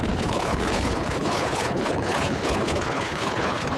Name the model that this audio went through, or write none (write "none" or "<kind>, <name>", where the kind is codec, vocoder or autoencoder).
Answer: codec, HILCodec